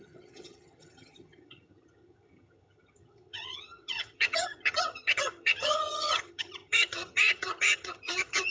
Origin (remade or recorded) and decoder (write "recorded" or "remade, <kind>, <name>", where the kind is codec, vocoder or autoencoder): remade, vocoder, HiFi-GAN